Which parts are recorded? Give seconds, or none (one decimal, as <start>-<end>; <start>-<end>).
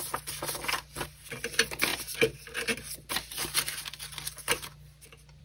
0.0-5.4